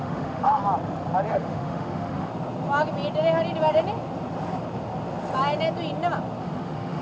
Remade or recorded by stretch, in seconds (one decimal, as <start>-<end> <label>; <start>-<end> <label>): 0.0-0.6 remade; 0.6-1.3 recorded; 1.3-2.3 remade; 2.3-6.4 recorded; 6.4-7.0 remade

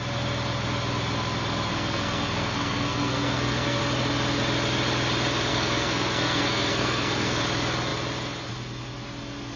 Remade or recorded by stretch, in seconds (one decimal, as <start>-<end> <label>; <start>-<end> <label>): 0.0-1.7 recorded; 1.7-3.8 remade; 3.8-5.5 recorded; 5.5-7.4 remade; 7.4-9.6 recorded

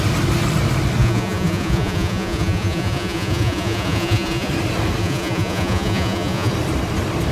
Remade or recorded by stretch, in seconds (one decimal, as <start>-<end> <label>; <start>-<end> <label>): 0.0-1.0 recorded; 1.0-4.5 remade; 4.5-5.0 recorded; 5.0-6.5 remade; 6.5-7.3 recorded